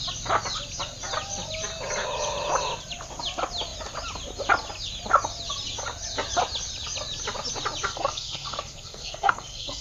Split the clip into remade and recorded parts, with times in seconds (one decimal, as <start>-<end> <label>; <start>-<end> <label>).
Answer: 0.0-7.9 recorded; 7.9-9.8 remade